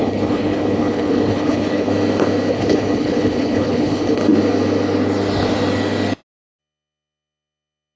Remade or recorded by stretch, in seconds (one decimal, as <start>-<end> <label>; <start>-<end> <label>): 0.0-1.9 remade; 1.9-2.5 recorded; 2.5-4.2 remade; 4.2-6.6 recorded; 6.6-8.0 remade